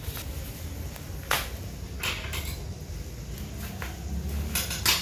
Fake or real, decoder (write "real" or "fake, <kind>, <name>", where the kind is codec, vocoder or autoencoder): real